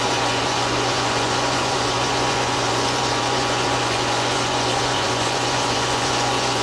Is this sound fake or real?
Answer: fake